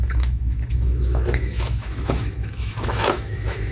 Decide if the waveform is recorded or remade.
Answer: remade